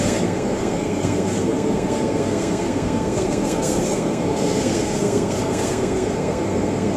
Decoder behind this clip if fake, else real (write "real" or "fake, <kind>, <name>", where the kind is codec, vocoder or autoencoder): fake, codec, SNAC